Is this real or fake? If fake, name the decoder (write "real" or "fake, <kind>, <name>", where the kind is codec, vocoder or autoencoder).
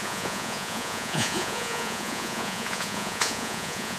fake, vocoder, Vocos